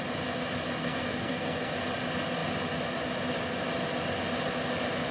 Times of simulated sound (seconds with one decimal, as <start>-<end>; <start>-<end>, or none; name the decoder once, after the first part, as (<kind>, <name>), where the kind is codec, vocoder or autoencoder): 0.8-1.7 (codec, SNAC)